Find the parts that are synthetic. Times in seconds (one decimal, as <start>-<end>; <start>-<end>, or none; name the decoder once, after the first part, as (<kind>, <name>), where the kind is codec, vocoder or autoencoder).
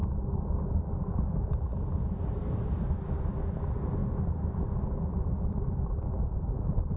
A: none